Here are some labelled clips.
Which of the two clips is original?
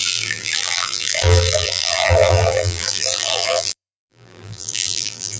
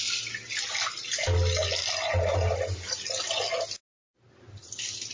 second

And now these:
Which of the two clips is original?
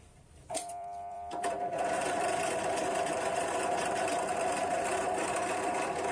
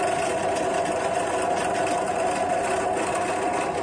second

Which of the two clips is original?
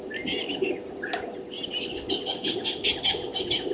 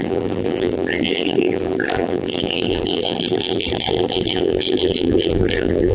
first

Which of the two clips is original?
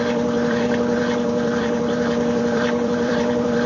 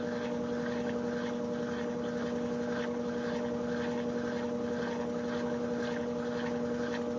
second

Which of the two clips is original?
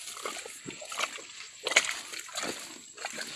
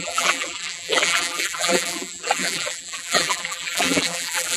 first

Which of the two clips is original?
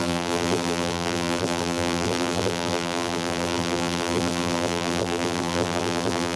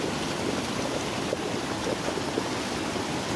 second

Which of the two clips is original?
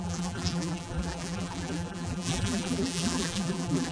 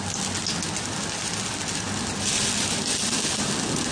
second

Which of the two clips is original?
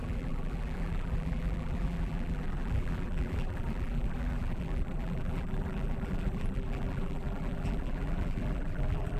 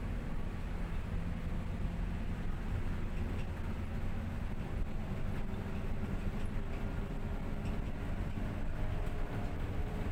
second